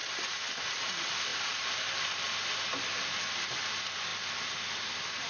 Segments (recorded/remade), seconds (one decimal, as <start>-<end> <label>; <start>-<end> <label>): 0.0-1.3 recorded; 1.3-2.2 remade; 2.2-5.3 recorded